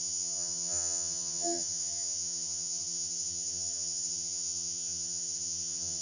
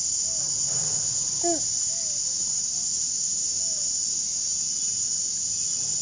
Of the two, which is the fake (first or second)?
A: first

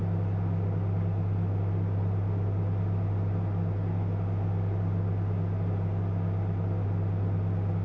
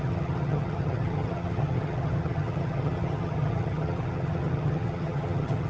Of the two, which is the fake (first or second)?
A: second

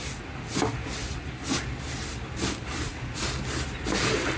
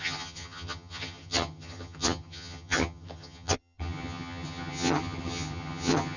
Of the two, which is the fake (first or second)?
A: second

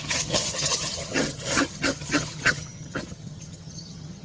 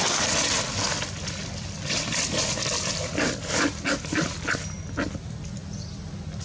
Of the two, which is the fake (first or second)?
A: first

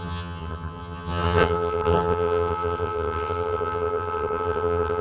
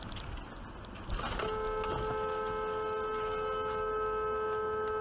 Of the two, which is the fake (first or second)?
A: first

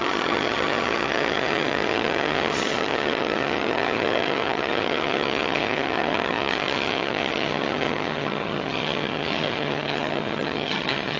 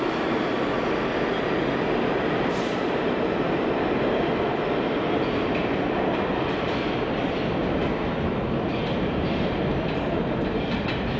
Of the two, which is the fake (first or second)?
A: first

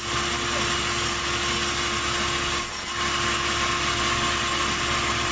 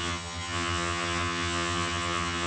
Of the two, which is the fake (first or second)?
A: second